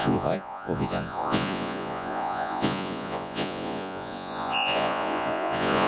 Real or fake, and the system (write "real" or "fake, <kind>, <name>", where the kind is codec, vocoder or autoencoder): fake, vocoder, Vocos